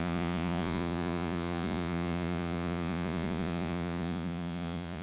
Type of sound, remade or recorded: remade